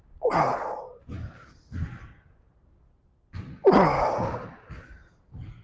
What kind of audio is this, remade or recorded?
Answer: recorded